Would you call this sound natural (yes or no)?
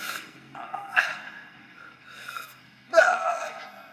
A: no